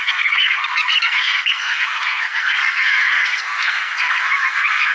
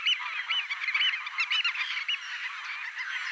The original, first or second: second